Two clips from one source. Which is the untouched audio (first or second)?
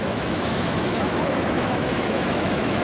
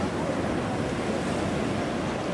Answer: second